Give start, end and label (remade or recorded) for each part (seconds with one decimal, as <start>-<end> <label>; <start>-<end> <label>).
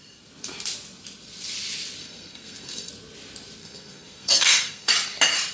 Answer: 0.0-2.0 recorded; 2.0-2.9 remade; 2.9-3.6 recorded; 3.6-4.9 remade; 4.9-5.5 recorded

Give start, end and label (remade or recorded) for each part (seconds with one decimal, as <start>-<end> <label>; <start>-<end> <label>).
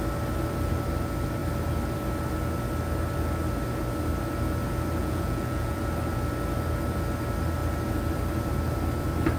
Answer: 0.0-5.0 recorded; 5.0-5.8 remade; 5.8-9.4 recorded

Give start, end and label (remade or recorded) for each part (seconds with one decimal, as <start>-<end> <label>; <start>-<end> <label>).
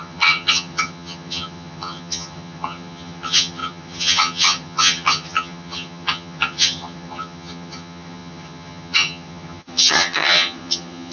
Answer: 0.0-11.1 remade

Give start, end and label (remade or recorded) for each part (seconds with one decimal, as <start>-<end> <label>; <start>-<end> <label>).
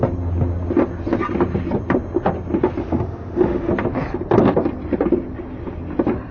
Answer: 0.0-2.8 recorded; 2.8-3.7 remade; 3.7-6.3 recorded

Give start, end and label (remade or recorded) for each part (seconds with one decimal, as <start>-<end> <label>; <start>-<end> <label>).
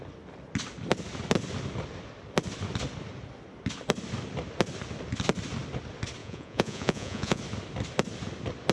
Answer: 0.0-6.2 recorded; 6.2-7.4 remade; 7.4-8.7 recorded